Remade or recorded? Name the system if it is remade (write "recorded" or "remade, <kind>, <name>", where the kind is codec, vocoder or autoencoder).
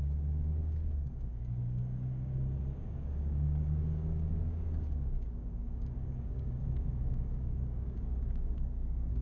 remade, codec, DAC